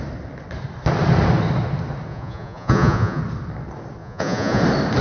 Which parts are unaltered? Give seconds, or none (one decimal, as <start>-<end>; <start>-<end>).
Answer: 0.0-2.1; 3.2-4.0; 4.6-5.0